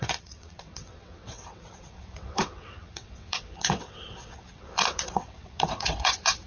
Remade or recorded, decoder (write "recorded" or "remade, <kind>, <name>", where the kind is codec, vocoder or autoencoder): remade, vocoder, WaveNeXt